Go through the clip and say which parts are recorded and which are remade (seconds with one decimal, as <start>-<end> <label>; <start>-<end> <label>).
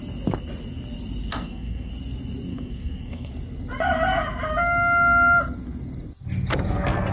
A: 0.0-1.3 recorded; 1.3-1.9 remade; 1.9-2.5 recorded; 2.5-3.3 remade; 3.3-7.1 recorded